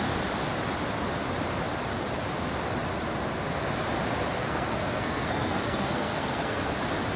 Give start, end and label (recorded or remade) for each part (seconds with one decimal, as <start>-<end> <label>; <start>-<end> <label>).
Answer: 0.0-4.4 recorded; 4.4-6.7 remade; 6.7-7.2 recorded